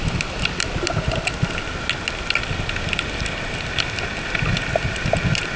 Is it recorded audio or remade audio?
recorded